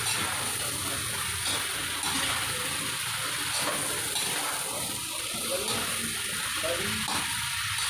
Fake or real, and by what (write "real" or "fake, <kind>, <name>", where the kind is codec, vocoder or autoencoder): real